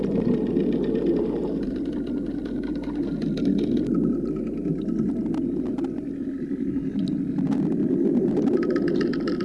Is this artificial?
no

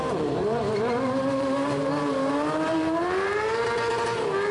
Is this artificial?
yes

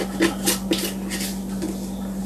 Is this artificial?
no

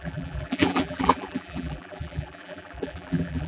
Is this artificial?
yes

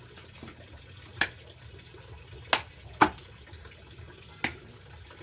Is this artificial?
no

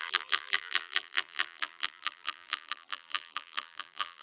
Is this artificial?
yes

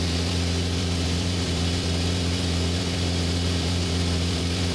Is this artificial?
yes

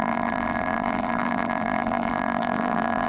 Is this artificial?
yes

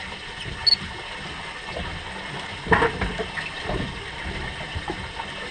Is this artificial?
no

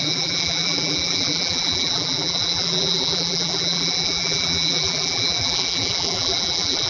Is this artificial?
yes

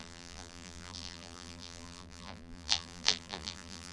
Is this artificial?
yes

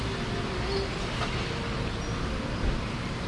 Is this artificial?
no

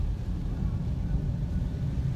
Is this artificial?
yes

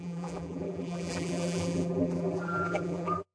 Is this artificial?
yes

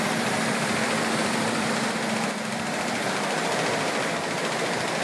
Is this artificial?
yes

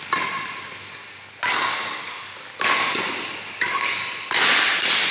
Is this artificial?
no